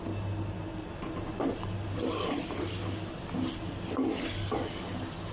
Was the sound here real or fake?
real